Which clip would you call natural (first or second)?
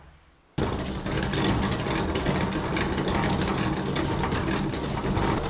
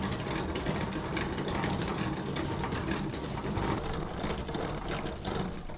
first